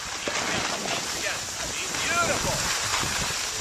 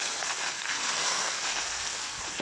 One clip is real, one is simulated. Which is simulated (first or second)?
second